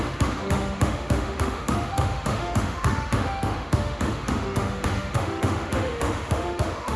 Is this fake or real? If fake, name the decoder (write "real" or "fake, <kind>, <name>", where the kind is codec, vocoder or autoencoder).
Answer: fake, autoencoder, DAC-VAE